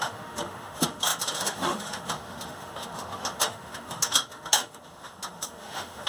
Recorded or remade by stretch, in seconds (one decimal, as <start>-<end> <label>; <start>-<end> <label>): 0.0-6.1 remade